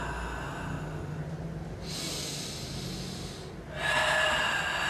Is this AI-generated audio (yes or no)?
no